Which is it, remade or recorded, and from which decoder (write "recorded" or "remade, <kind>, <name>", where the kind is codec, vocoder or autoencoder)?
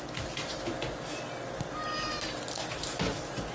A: recorded